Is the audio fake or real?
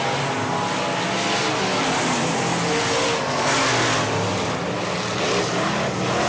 real